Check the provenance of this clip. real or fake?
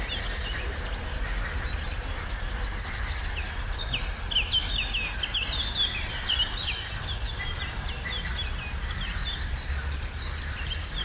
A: real